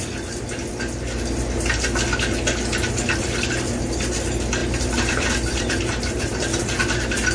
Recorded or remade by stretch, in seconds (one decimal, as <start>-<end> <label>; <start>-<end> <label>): 0.0-4.6 recorded; 4.6-6.8 remade; 6.8-7.3 recorded